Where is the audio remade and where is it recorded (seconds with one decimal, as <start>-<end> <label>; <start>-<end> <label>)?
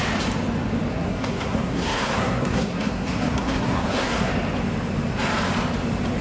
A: 0.0-0.9 recorded; 0.9-4.3 remade; 4.3-6.2 recorded